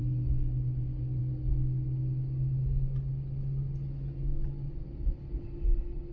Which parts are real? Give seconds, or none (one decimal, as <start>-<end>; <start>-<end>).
0.0-6.1